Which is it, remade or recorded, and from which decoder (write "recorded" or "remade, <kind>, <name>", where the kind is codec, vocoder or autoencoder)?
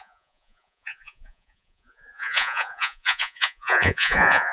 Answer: remade, vocoder, Vocos